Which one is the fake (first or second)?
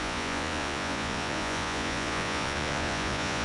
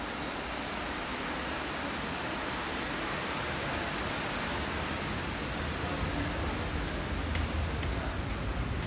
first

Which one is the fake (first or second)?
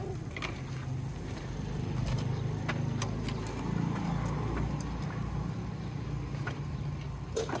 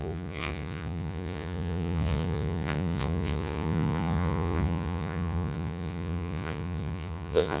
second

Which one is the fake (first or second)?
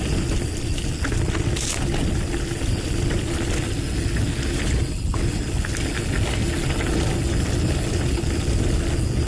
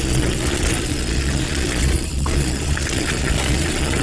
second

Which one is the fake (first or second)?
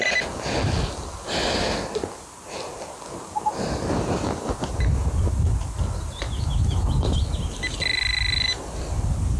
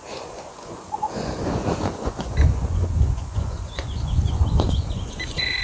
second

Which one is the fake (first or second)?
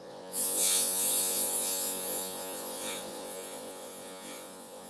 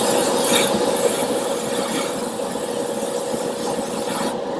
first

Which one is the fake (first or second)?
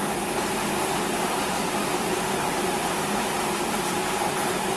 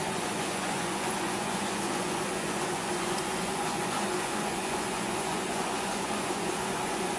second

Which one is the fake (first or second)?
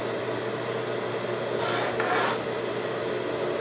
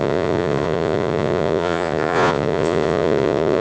second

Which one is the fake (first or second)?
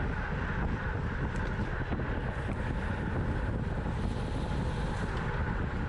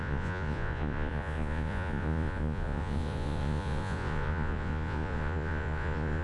second